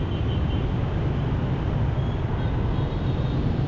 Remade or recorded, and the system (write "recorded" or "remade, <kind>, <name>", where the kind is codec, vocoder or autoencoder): recorded